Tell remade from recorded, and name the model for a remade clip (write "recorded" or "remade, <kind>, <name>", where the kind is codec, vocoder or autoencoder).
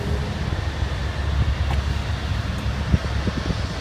recorded